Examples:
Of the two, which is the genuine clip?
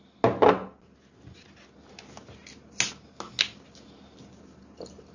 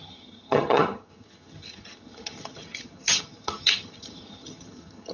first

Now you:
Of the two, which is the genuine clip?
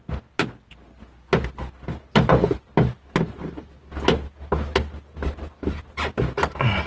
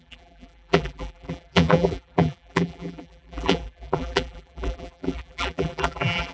first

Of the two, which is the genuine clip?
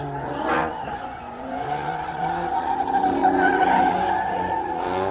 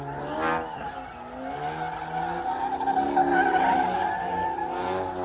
second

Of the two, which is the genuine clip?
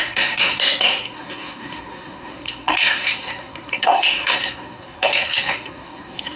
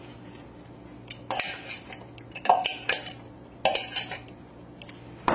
second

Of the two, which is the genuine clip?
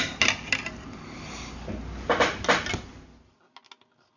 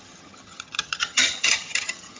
first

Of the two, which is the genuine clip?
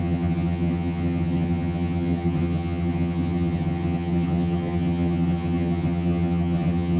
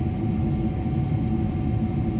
second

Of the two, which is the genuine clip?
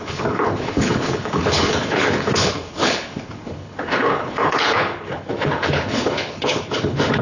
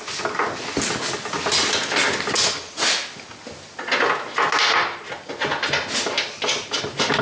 second